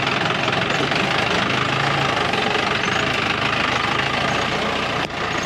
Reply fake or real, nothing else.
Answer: real